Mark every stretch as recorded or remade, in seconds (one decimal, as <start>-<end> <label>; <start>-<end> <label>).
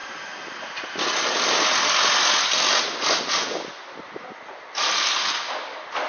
0.0-6.1 recorded